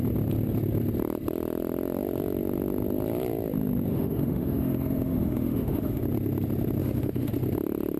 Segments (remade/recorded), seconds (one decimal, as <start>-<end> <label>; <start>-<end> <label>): 0.0-3.9 recorded; 3.9-6.0 remade; 6.0-6.8 recorded; 6.8-7.3 remade; 7.3-8.0 recorded

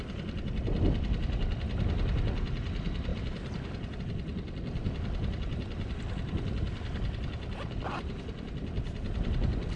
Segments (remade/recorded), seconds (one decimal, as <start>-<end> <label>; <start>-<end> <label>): 0.0-3.1 recorded; 3.1-4.0 remade; 4.0-9.8 recorded

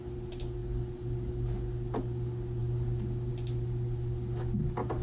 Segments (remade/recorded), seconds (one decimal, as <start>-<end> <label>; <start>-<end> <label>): 0.0-5.0 recorded